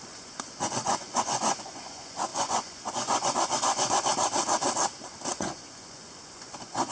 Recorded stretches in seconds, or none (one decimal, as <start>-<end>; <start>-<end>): 4.1-5.3

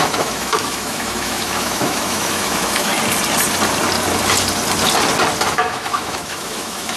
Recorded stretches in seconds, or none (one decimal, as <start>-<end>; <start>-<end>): 2.9-5.5

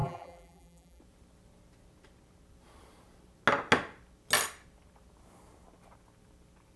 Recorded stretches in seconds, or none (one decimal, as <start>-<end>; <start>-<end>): 1.0-6.8

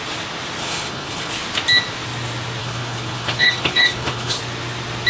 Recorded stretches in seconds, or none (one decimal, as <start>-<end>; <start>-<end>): 0.0-0.6; 1.3-2.6; 4.4-5.1

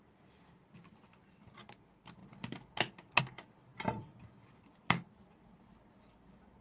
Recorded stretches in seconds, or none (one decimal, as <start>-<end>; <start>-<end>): 0.0-6.6